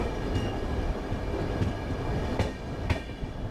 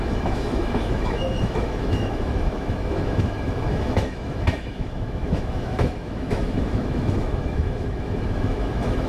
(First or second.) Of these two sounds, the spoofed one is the second